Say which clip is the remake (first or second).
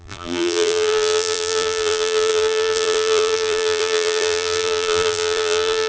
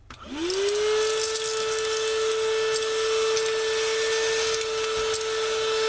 first